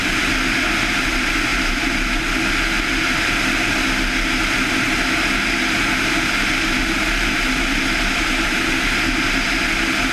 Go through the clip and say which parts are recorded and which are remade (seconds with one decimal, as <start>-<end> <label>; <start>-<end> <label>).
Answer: 0.0-1.5 recorded; 1.5-2.2 remade; 2.2-6.8 recorded; 6.8-9.5 remade; 9.5-10.1 recorded